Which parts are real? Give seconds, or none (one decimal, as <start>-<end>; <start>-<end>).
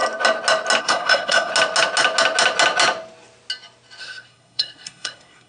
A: 0.0-0.8; 1.5-4.0